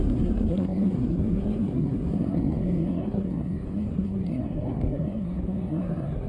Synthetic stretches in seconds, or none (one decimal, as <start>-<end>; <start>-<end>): 0.0-6.3